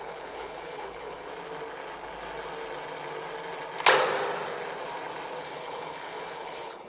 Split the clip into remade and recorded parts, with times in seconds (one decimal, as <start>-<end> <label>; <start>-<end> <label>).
0.0-1.3 remade; 1.3-5.4 recorded; 5.4-6.9 remade